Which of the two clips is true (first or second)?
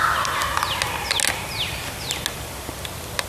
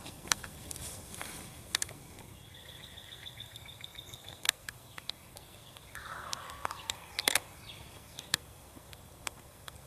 first